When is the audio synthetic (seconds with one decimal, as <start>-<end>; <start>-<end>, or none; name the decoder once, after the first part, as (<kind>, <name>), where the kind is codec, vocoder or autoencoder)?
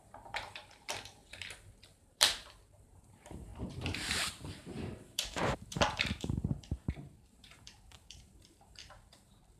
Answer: 0.0-1.2 (vocoder, BigVGAN v2); 1.8-9.6